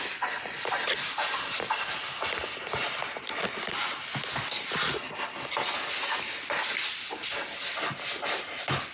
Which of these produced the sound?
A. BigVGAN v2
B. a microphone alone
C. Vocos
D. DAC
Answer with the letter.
B